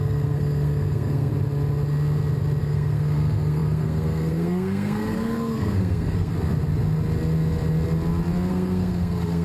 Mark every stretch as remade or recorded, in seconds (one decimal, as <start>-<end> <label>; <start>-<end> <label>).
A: 0.0-1.3 remade; 1.3-2.6 recorded; 2.6-6.3 remade; 6.3-8.5 recorded; 8.5-9.4 remade